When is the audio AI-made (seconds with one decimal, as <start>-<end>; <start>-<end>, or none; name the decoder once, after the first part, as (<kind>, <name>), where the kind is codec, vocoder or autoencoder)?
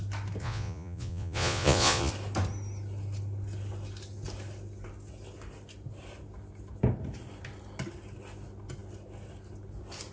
0.4-2.1 (vocoder, Vocos)